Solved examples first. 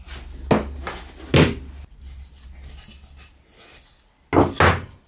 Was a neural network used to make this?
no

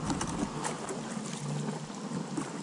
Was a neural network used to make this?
no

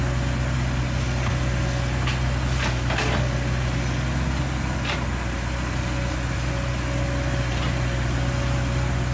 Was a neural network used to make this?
no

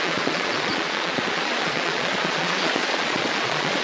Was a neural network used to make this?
yes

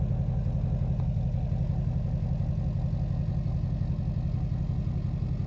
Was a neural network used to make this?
no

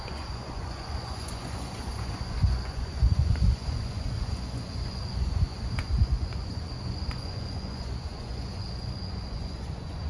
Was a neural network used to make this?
yes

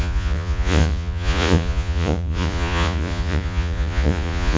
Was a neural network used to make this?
yes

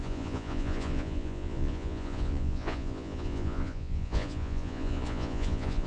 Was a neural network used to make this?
yes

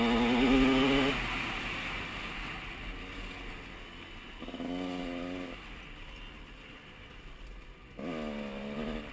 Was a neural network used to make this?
no